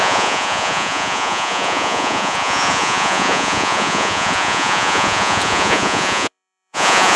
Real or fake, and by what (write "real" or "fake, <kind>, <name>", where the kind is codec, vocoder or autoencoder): fake, vocoder, Vocos